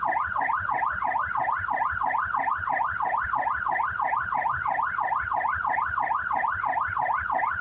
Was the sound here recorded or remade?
recorded